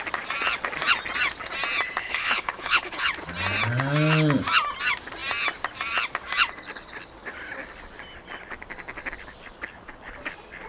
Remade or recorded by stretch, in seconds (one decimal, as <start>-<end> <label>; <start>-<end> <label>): 0.0-2.0 recorded; 2.0-3.1 remade; 3.1-10.7 recorded